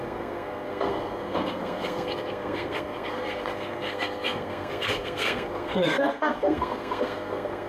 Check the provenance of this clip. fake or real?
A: fake